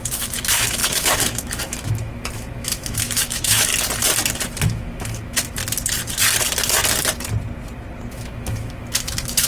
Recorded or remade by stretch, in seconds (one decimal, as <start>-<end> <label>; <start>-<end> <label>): 0.0-3.7 remade; 3.7-4.6 recorded; 4.6-5.6 remade; 5.6-8.1 recorded; 8.1-9.5 remade

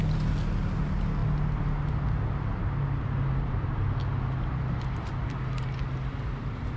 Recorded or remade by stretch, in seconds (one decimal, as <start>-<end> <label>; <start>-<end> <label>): 0.0-6.8 recorded

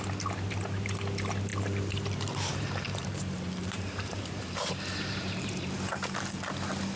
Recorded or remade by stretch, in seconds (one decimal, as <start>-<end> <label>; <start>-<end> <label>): 0.0-1.5 recorded; 1.5-5.7 remade; 5.7-7.0 recorded

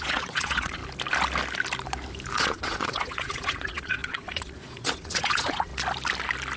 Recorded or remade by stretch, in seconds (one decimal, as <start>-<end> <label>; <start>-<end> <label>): 0.0-0.8 remade; 0.8-2.4 recorded; 2.4-5.7 remade; 5.7-6.6 recorded

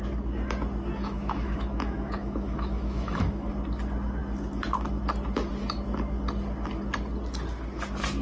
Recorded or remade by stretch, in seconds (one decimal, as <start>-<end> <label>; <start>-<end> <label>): 0.0-1.0 recorded; 1.0-3.5 remade; 3.5-8.2 recorded

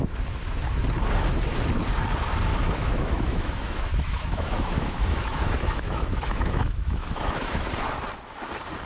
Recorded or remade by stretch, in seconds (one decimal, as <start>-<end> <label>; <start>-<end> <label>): 0.0-2.5 recorded; 2.5-7.7 remade; 7.7-8.9 recorded